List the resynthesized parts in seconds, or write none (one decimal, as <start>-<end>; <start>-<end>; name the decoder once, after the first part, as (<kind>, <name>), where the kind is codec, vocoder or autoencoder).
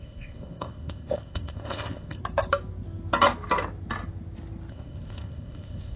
0.0-2.2 (codec, ZipCodec); 4.7-6.0